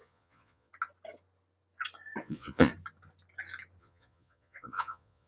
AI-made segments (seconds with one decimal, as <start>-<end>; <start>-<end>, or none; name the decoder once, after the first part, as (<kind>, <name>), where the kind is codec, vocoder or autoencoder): 0.0-0.7 (vocoder, Vocos); 2.2-2.7; 3.8-5.3